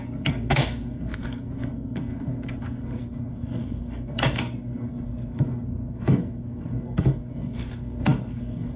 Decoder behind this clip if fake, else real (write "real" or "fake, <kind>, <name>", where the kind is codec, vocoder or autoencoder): fake, codec, SNAC